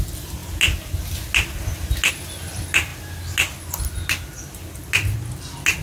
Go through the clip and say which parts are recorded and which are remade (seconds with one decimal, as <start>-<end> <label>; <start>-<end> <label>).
0.0-5.8 recorded